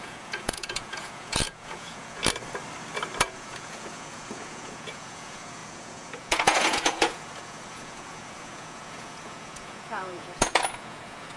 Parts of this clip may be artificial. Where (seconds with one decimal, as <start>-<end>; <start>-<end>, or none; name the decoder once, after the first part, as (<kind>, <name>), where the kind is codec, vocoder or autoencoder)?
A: 0.0-2.2 (vocoder, Vocos); 3.2-11.4